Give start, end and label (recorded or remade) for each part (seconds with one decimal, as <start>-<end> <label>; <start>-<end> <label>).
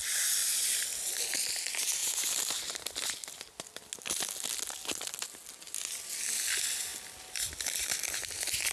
0.0-8.7 recorded